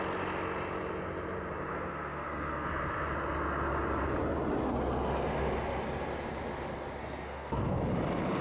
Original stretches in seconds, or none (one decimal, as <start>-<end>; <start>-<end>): 0.0-1.7; 2.7-7.0; 7.8-8.4